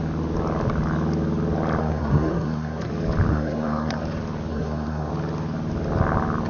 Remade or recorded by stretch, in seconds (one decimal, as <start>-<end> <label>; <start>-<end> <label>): 0.0-1.8 recorded; 1.8-2.9 remade; 2.9-3.3 recorded; 3.3-4.0 remade; 4.0-4.5 recorded; 4.5-5.1 remade; 5.1-6.5 recorded